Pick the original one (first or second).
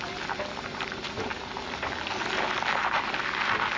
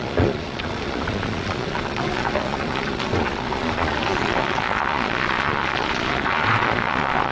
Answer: first